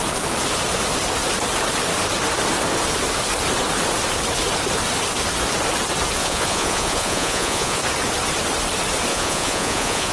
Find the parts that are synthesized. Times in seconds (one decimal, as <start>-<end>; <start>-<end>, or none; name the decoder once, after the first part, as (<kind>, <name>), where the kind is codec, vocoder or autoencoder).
6.2-7.8 (vocoder, Vocos); 9.1-10.1